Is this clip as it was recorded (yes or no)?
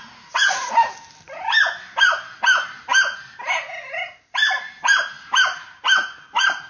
yes